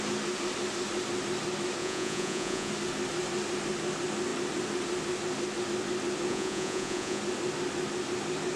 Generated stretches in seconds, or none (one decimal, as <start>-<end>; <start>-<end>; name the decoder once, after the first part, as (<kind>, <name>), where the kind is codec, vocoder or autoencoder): 1.8-2.7 (vocoder, Vocos); 6.3-7.2